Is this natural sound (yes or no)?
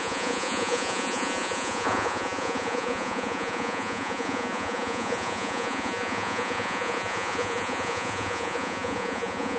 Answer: no